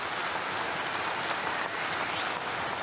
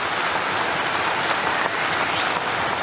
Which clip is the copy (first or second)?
second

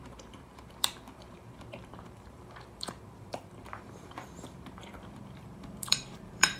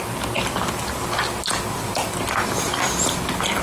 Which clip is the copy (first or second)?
first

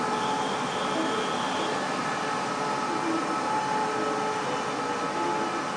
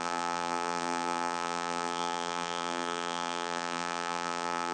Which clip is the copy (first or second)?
second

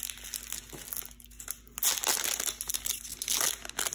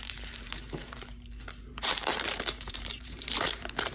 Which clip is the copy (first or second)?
second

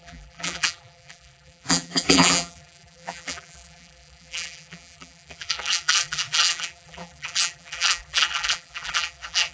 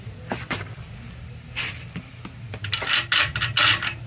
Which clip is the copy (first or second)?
first